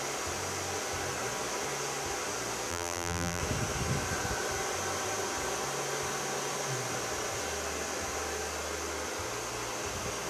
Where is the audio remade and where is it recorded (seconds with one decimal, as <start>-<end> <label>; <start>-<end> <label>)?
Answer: 0.0-2.7 recorded; 2.7-3.4 remade; 3.4-10.3 recorded